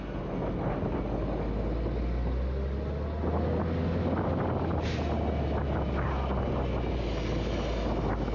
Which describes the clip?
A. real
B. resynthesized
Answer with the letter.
A